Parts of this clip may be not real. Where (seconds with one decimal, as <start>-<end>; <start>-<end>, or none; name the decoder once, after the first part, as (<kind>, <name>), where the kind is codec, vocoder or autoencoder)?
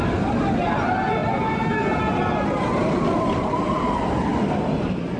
none